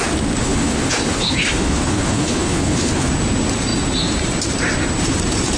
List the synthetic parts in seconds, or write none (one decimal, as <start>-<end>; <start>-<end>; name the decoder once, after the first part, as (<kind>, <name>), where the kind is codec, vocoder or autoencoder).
0.4-3.1 (codec, HILCodec)